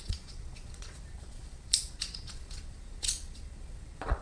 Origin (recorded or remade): remade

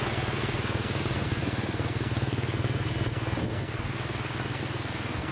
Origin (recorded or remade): remade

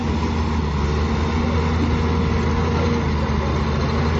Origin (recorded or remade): recorded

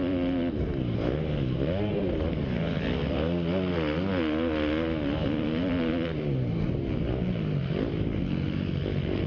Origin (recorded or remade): recorded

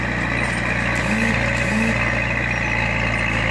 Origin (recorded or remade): recorded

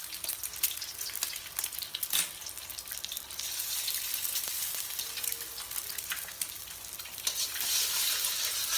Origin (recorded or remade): recorded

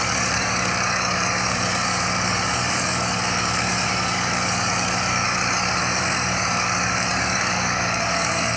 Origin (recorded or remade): remade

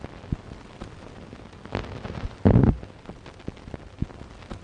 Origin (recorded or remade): recorded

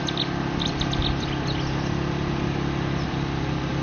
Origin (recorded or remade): recorded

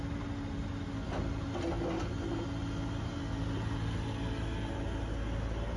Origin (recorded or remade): recorded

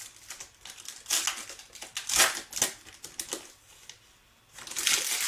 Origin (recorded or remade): recorded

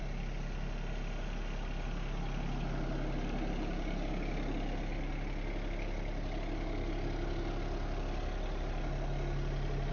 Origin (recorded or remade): recorded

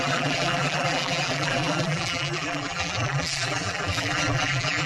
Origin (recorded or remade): remade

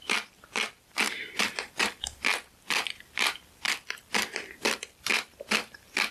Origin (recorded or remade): remade